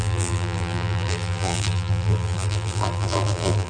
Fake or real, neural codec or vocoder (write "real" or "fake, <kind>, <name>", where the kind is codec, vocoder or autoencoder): fake, vocoder, BigVGAN v2